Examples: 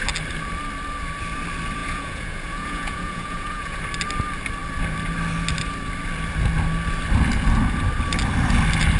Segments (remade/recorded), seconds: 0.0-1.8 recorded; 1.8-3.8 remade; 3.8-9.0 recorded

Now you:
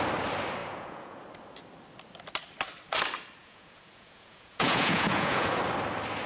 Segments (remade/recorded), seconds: 0.0-0.6 recorded; 0.6-1.2 remade; 1.2-3.4 recorded; 3.4-5.6 remade; 5.6-6.3 recorded

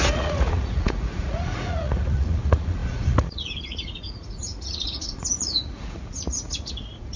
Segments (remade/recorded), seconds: 0.0-7.2 remade

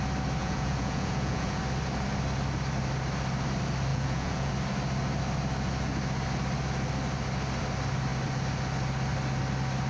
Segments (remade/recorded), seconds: 0.0-0.4 recorded; 0.4-1.6 remade; 1.6-3.9 recorded; 3.9-4.5 remade; 4.5-9.9 recorded

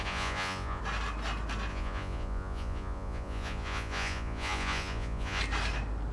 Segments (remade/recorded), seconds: 0.0-0.8 remade; 0.8-1.7 recorded; 1.7-5.4 remade; 5.4-6.1 recorded

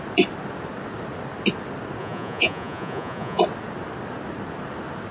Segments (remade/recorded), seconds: 0.0-2.0 recorded; 2.0-3.4 remade; 3.4-5.1 recorded

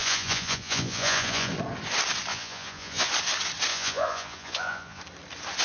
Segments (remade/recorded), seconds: 0.0-1.5 remade; 1.5-2.3 recorded; 2.3-3.1 remade; 3.1-3.7 recorded; 3.7-5.0 remade; 5.0-5.6 recorded